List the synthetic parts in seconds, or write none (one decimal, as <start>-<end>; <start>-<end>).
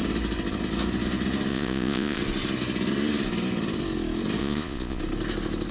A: 1.5-2.2; 4.4-5.0